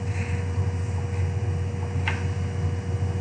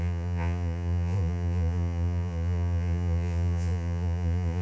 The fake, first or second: second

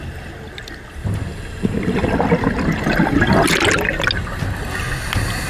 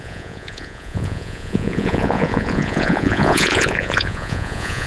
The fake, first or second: second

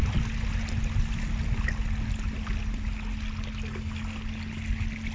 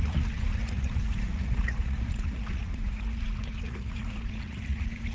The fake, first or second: second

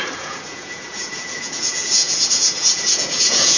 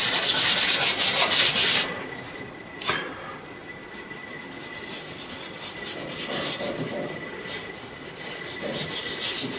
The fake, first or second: first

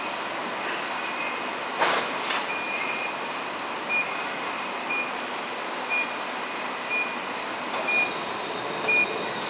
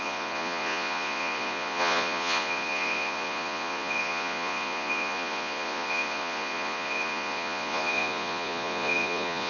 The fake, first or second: second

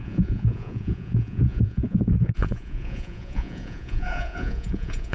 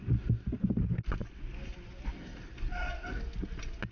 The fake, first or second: first